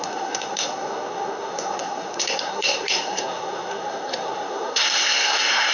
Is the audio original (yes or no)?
no